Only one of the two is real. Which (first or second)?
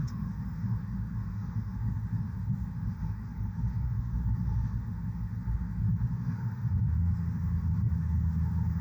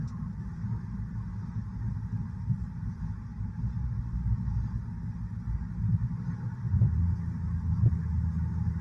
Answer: second